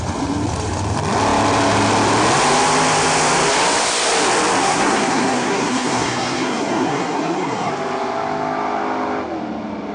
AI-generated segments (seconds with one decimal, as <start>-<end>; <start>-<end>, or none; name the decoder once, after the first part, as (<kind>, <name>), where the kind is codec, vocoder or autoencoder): 4.6-7.7 (codec, SNAC)

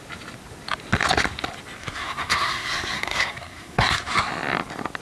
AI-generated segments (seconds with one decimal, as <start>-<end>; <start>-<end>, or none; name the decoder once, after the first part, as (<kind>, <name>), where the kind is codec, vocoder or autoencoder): 1.8-4.3 (codec, SNAC)

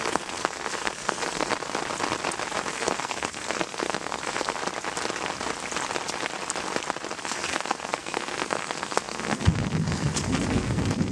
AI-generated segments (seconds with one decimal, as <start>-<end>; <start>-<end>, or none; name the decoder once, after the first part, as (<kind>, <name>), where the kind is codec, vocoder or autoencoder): 0.0-1.5 (codec, SNAC); 2.7-4.6; 7.2-11.1

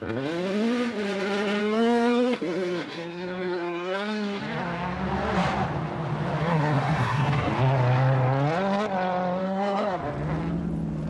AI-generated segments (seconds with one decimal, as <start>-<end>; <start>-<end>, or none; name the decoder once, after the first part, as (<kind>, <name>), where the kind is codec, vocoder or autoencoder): 1.6-4.4 (codec, SNAC); 6.4-7.5; 9.4-10.0

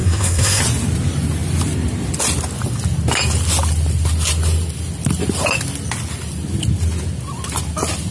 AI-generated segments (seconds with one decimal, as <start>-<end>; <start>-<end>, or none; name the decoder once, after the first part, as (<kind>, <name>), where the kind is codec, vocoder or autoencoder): 0.0-0.6 (codec, SNAC)

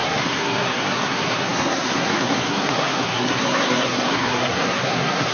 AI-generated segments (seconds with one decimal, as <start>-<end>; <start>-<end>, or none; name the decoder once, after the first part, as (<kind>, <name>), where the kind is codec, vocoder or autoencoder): 0.0-5.3 (codec, SNAC)